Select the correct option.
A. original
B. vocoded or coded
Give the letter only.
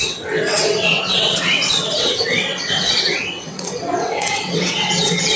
B